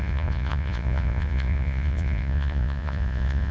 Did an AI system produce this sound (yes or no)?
yes